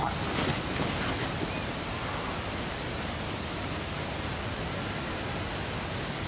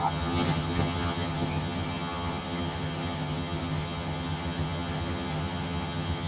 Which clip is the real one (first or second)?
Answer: first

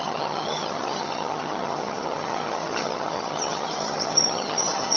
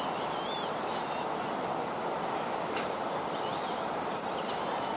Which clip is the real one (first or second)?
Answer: second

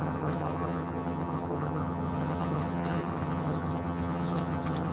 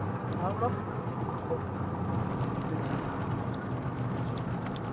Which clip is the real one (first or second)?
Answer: second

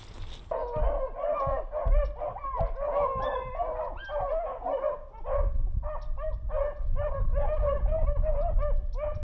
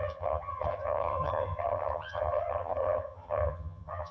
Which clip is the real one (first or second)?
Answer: first